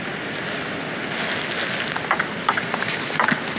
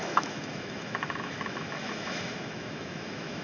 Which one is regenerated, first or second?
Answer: second